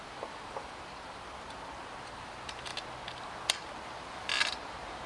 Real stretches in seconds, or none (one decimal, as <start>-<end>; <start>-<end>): 0.0-5.1